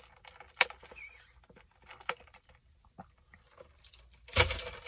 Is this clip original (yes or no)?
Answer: yes